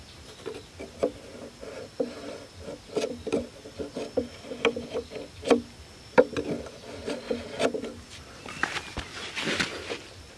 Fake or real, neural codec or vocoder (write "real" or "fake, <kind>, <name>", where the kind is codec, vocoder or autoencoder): real